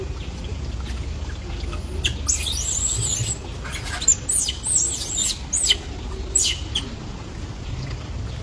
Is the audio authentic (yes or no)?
yes